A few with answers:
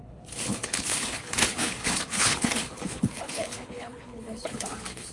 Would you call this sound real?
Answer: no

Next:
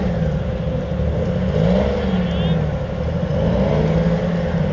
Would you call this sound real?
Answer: yes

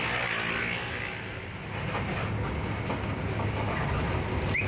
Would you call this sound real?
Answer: yes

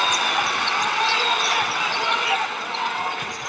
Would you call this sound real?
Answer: no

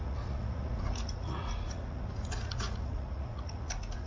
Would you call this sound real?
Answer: no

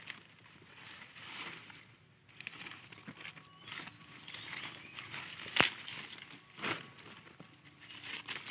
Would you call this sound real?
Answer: yes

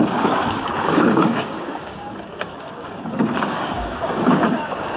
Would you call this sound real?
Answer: no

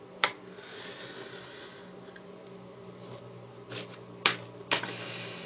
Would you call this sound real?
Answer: yes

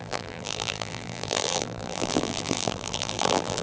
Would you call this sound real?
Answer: no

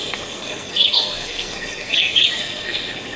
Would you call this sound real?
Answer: no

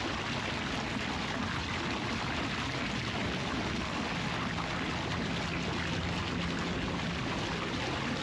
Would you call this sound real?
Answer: yes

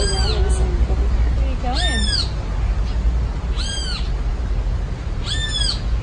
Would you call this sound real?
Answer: yes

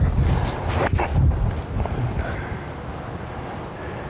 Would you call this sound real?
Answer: yes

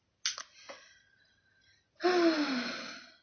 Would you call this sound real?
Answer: yes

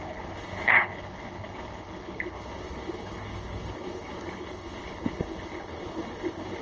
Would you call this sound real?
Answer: no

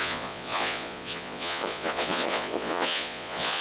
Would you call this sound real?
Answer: no